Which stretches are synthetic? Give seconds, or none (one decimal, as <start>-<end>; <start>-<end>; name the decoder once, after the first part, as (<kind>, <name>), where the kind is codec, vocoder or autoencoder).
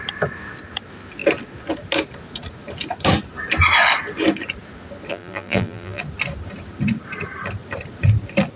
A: 5.1-6.0 (vocoder, BigVGAN v2)